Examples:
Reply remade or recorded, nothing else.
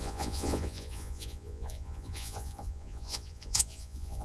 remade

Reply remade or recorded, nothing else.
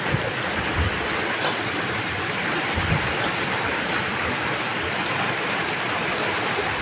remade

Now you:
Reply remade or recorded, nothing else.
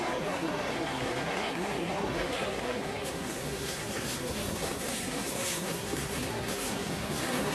remade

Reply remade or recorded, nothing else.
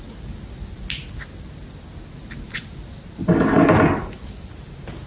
recorded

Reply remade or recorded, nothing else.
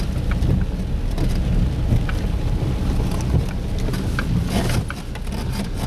recorded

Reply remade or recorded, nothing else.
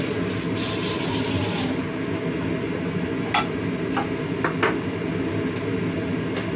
recorded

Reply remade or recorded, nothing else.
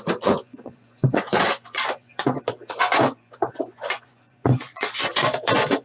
remade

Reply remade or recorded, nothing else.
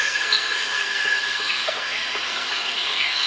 remade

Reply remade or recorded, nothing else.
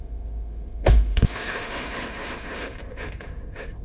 remade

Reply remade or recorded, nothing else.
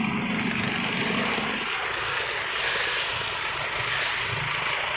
recorded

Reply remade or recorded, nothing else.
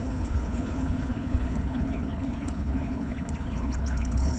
remade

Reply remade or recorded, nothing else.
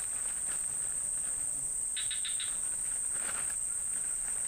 recorded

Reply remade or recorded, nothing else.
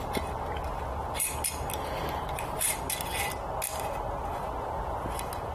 recorded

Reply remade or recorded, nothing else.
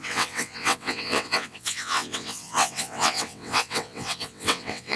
remade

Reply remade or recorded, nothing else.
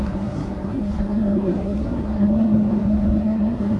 remade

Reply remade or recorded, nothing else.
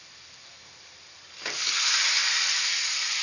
recorded